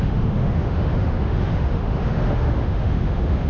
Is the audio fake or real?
fake